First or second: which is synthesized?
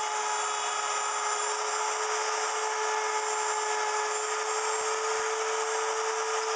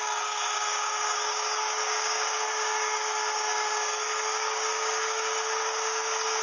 second